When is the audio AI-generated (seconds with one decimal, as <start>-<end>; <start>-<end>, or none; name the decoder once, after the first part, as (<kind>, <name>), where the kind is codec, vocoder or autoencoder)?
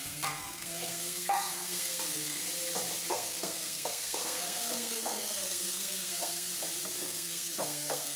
0.0-2.4 (codec, SNAC); 3.1-6.5; 7.0-8.2